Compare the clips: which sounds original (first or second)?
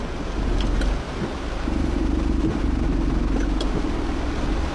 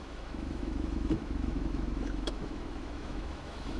first